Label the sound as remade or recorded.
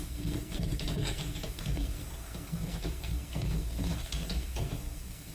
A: remade